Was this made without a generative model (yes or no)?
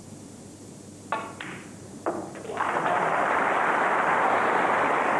no